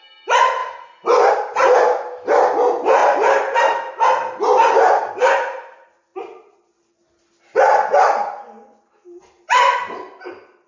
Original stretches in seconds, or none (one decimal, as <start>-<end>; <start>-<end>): 0.0-10.7

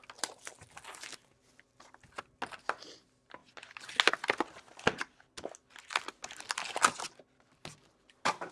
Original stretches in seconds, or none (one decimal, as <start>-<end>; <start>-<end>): 0.0-8.5

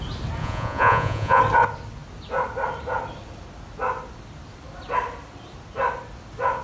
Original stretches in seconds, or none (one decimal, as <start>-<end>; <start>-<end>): 0.0-0.4; 1.4-6.6

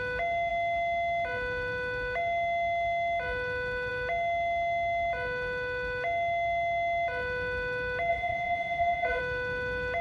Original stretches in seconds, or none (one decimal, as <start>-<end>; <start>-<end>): 0.0-8.1; 9.2-10.0

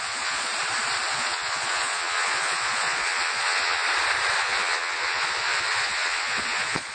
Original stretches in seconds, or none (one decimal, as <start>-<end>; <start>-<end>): 0.5-1.1; 3.8-4.4

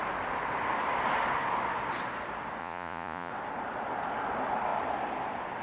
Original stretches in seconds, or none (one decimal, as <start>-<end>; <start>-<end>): 0.0-2.6; 3.3-5.6

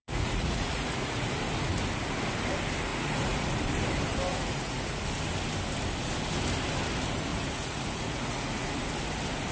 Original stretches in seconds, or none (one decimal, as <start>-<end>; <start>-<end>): 1.3-2.9; 3.6-4.3; 5.0-7.3; 8.7-9.5

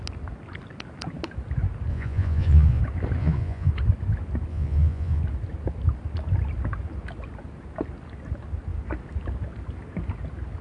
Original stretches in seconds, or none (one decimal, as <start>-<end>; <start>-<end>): 0.0-1.9; 2.8-3.2; 3.7-4.5; 5.2-10.6